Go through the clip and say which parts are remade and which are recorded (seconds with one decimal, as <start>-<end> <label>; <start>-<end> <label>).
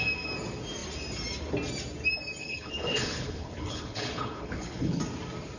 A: 0.0-2.4 recorded; 2.4-5.0 remade; 5.0-5.6 recorded